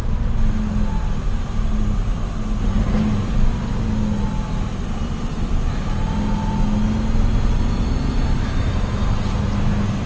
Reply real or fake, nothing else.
real